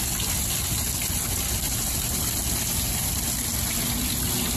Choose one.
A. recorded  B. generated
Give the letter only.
A